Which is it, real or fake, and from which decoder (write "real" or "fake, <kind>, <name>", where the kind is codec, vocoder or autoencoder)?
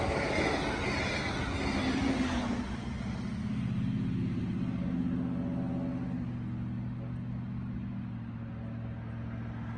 real